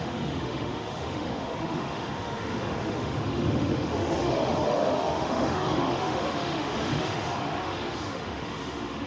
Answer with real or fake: fake